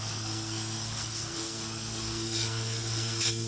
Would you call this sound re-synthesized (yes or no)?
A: yes